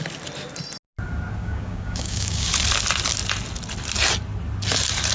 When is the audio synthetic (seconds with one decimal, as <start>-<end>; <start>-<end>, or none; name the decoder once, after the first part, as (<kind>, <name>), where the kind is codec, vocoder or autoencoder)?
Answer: 1.4-2.5 (codec, DAC)